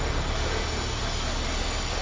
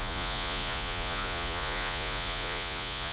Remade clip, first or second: second